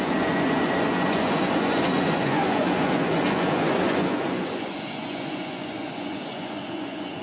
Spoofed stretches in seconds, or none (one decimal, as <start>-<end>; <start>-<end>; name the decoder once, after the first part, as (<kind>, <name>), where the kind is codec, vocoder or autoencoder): 0.0-7.2 (vocoder, Vocos)